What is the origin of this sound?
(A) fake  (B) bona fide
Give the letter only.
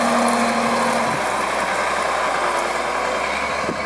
B